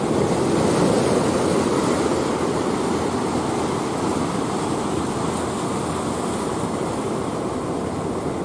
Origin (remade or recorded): recorded